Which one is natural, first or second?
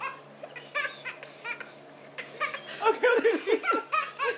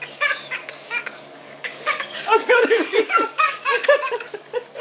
first